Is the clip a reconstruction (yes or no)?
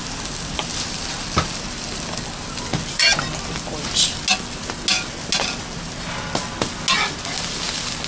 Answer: no